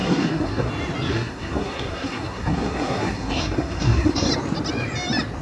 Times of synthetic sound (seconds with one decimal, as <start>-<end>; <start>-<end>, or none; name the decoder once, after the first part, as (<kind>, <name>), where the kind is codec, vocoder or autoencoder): 0.0-0.7 (codec, SNAC); 1.1-4.3